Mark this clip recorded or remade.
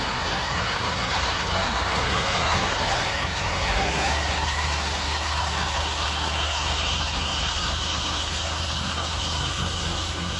remade